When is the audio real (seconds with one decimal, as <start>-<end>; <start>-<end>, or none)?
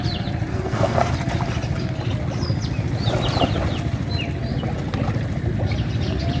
0.0-0.5; 1.1-6.4